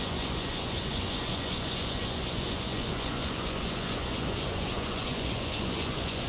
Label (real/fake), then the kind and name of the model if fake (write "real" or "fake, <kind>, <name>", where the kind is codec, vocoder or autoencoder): fake, vocoder, Vocos